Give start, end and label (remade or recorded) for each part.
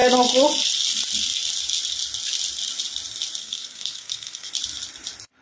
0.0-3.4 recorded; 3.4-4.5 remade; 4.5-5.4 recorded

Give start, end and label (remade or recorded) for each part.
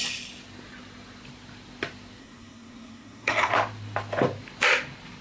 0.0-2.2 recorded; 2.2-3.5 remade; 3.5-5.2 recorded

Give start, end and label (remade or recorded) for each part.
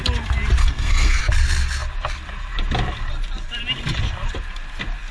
0.0-0.6 recorded; 0.6-1.2 remade; 1.2-5.1 recorded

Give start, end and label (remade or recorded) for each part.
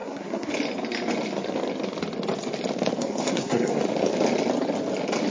0.0-0.5 remade; 0.5-3.0 recorded; 3.0-3.8 remade; 3.8-5.3 recorded